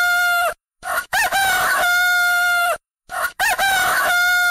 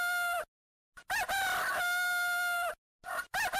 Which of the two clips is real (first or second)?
second